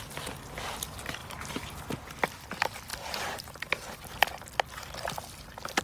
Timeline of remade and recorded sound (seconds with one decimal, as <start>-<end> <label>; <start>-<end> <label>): 0.0-1.2 recorded; 1.2-1.8 remade; 1.8-2.9 recorded; 2.9-4.1 remade; 4.1-5.8 recorded